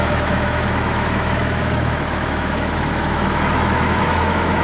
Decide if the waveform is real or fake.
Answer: fake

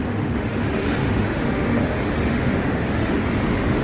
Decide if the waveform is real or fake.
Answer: fake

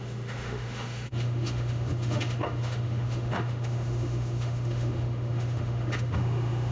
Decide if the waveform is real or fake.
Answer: fake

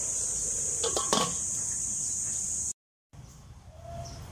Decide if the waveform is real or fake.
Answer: real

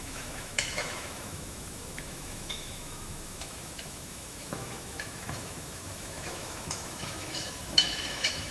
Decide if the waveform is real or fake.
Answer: fake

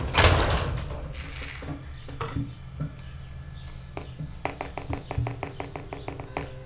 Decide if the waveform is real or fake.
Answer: real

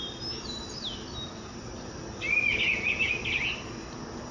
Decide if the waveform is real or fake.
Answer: real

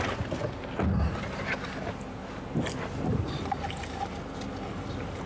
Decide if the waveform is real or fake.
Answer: real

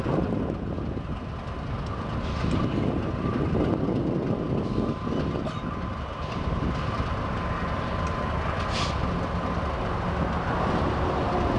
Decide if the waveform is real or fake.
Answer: real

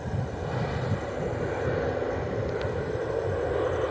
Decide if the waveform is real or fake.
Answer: real